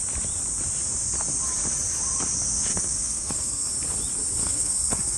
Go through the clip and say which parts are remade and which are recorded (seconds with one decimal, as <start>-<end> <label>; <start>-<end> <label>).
0.0-2.7 recorded; 2.7-3.7 remade; 3.7-4.4 recorded; 4.4-5.2 remade